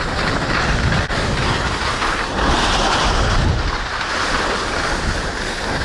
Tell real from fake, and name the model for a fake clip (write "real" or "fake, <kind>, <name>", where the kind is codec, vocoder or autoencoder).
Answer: real